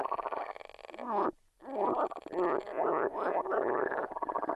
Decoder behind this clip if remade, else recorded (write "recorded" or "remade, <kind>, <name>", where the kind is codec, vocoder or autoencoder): recorded